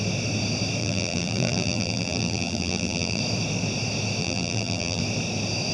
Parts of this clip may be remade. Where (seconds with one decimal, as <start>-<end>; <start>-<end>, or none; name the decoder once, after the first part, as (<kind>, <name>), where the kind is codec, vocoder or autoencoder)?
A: 0.8-3.2 (vocoder, BigVGAN v2); 4.2-5.0